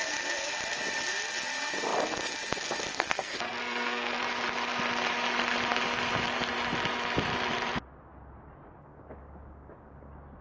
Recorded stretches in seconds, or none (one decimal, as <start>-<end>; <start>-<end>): 0.0-2.9; 4.2-10.4